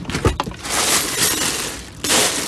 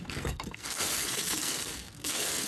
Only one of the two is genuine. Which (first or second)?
first